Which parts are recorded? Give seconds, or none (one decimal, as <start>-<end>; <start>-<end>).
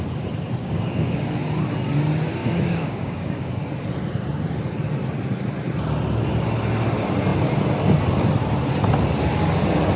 0.0-0.6; 1.3-2.4; 3.5-10.0